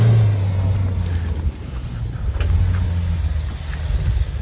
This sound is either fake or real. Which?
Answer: real